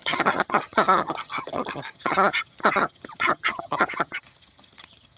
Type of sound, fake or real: fake